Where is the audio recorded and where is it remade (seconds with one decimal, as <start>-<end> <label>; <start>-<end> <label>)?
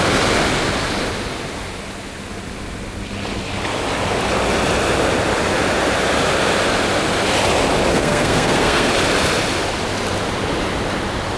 0.0-7.9 recorded; 7.9-8.9 remade; 8.9-11.4 recorded